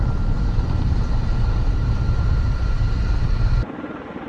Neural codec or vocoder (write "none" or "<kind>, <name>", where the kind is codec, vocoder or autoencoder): vocoder, BigVGAN v2